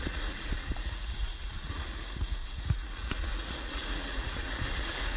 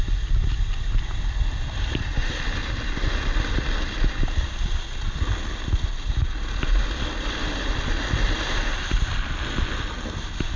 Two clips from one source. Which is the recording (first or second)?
second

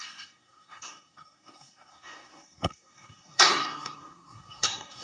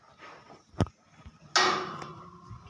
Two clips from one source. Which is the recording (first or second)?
second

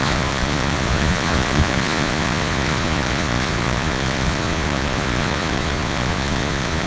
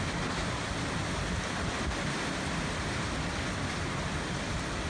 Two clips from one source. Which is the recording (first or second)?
second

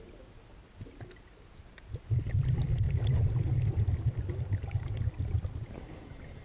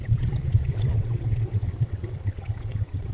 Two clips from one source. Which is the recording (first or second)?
first